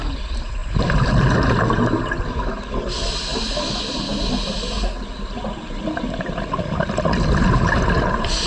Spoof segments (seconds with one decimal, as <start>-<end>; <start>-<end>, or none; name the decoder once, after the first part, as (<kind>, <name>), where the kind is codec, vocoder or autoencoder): 0.0-0.6 (vocoder, BigVGAN v2); 2.2-3.3